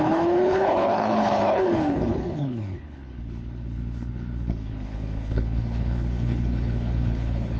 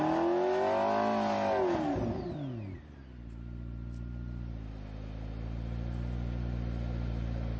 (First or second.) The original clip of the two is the second